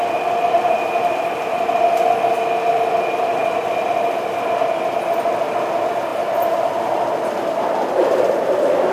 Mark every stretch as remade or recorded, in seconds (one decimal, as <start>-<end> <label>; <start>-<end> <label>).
0.0-8.9 recorded